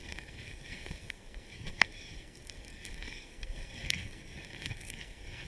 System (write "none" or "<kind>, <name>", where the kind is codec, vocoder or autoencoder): codec, SNAC